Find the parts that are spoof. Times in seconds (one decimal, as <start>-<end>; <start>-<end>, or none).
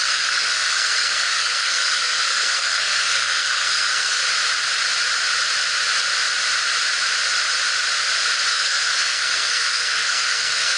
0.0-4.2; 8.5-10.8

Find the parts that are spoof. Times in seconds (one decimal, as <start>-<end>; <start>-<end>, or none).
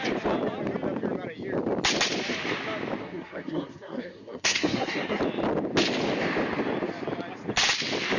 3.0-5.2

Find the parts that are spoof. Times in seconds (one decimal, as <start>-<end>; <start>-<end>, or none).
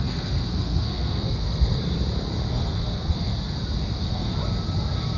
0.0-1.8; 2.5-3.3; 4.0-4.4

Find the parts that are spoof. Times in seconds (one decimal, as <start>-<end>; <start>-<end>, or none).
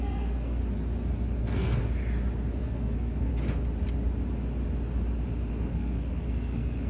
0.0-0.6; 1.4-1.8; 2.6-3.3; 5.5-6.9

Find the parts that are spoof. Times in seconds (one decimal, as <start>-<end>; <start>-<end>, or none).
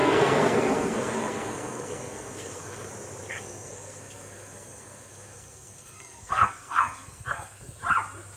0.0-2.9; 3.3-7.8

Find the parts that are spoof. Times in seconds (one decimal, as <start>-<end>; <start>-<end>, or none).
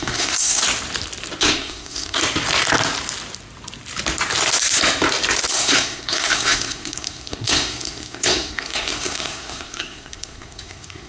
0.0-0.6; 1.4-2.2; 5.5-11.1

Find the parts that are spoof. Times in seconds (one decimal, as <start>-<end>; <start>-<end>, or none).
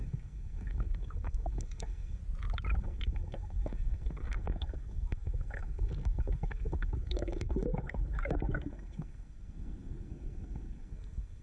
0.0-2.2; 2.8-11.4